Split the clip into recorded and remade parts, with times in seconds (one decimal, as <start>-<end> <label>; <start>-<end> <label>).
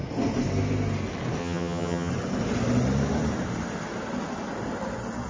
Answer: 0.0-1.4 recorded; 1.4-2.1 remade; 2.1-5.3 recorded